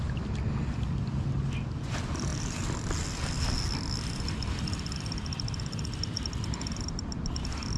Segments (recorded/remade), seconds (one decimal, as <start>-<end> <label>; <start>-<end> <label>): 0.0-7.8 recorded